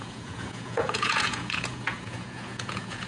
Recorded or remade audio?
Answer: remade